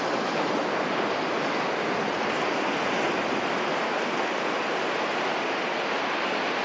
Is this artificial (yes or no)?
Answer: no